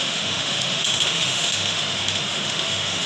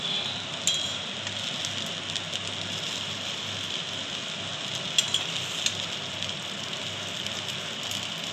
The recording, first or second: second